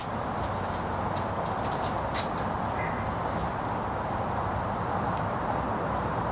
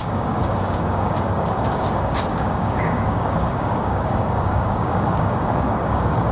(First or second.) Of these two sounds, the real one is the first